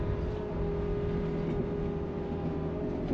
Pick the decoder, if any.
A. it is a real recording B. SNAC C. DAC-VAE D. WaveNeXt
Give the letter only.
A